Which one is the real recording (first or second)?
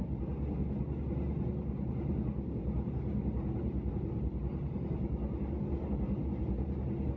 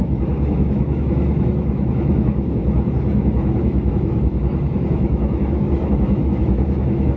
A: first